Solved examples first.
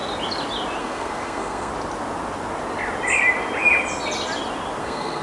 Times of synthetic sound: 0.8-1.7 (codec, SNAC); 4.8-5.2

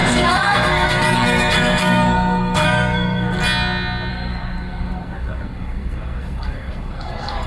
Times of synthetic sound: 0.0-3.4 (codec, SNAC); 4.1-7.5

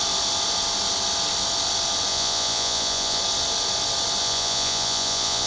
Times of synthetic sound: 2.1-3.2 (vocoder, Vocos); 4.2-5.5

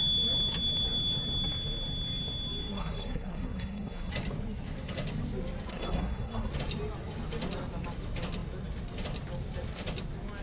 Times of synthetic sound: 2.7-4.1 (codec, SNAC); 5.7-6.5

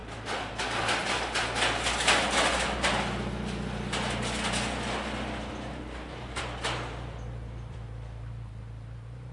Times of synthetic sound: 5.7-6.4 (vocoder, BigVGAN v2)

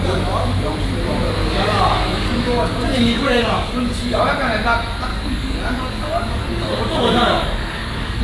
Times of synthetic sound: 1.4-4.2 (codec, DAC); 5.1-8.2

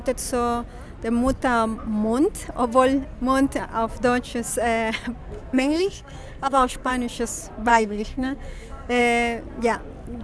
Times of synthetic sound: 5.2-6.9 (codec, SNAC); 7.7-9.0

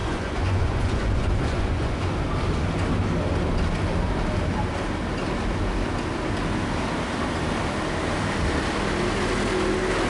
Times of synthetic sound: 0.0-2.2 (vocoder, Vocos)